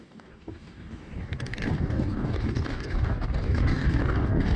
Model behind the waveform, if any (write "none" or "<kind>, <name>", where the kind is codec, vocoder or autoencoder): codec, DAC